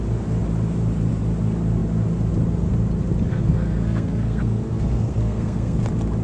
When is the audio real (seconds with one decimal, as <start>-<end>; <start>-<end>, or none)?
0.0-3.3; 5.8-6.2